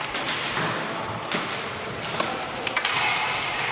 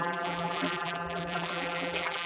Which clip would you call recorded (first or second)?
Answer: first